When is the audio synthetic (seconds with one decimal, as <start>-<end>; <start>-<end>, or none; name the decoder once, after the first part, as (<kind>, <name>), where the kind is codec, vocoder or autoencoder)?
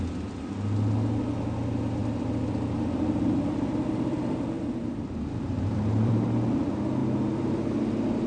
2.0-6.1 (vocoder, BigVGAN v2)